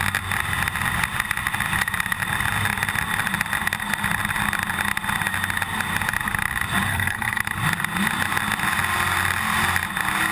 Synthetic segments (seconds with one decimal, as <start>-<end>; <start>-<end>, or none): 6.9-7.4